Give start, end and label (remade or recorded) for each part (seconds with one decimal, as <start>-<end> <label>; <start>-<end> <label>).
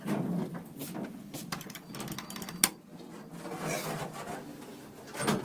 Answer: 0.0-5.4 recorded